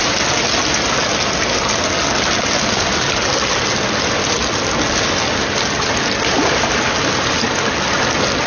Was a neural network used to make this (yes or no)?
no